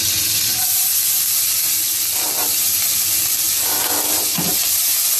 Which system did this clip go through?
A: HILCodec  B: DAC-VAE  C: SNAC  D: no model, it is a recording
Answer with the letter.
D